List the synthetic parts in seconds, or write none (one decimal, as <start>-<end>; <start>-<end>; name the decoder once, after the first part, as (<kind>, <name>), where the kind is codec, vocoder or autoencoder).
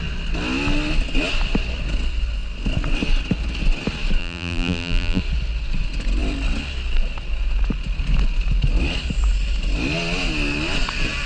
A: 4.2-5.2 (vocoder, BigVGAN v2)